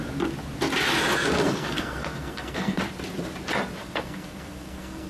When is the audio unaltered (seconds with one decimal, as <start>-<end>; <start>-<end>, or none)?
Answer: 0.0-1.4; 2.8-3.8